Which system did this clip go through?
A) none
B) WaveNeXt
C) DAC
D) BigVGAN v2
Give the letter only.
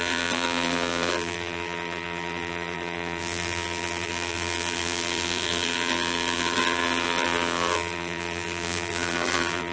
D